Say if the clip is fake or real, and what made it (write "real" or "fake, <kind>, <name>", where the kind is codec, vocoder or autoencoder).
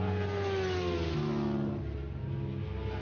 real